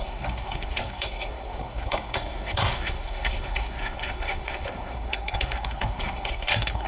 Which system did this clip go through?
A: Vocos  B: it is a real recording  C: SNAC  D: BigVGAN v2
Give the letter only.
C